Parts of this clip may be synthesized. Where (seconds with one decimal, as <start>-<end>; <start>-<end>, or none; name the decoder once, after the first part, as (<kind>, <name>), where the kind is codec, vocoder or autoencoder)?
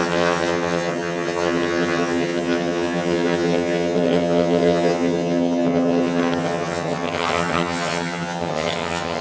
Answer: 0.0-9.2 (vocoder, HiFi-GAN)